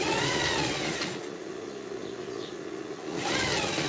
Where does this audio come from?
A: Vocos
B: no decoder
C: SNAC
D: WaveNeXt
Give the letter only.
A